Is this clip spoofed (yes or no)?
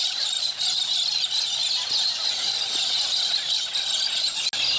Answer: no